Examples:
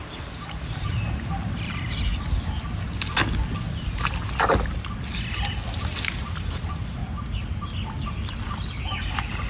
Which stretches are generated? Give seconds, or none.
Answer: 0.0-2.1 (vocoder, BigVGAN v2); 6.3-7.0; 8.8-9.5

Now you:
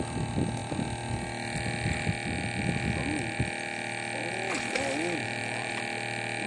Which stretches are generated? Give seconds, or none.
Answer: 5.2-5.7 (vocoder, BigVGAN v2)

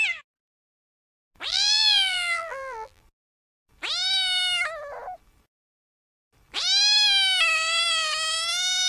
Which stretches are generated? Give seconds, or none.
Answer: 1.5-3.0 (vocoder, BigVGAN v2)

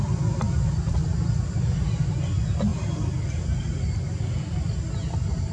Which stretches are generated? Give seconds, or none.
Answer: none

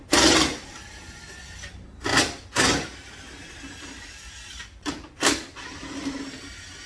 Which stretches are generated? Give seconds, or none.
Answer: 2.1-6.2 (vocoder, BigVGAN v2)